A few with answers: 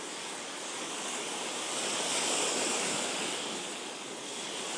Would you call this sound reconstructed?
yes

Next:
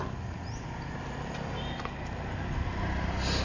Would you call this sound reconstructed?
no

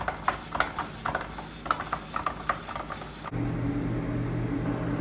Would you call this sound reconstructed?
no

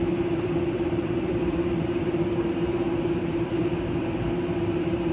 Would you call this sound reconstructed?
yes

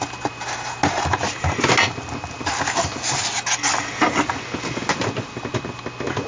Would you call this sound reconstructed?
no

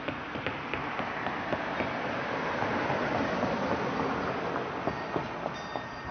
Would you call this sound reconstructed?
no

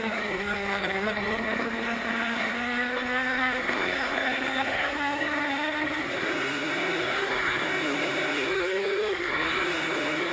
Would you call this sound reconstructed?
yes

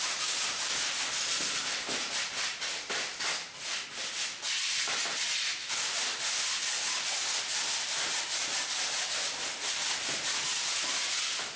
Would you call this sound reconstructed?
no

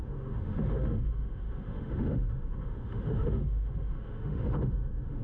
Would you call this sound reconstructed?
yes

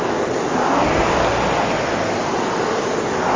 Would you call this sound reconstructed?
no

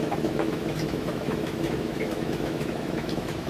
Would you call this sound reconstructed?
yes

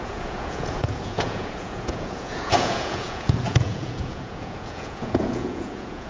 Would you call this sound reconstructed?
yes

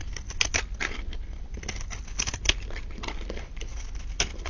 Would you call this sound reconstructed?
no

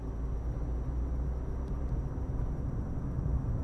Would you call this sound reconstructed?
no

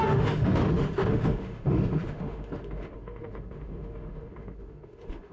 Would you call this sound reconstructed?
yes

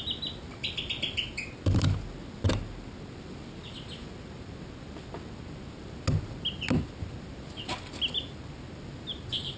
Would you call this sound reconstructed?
no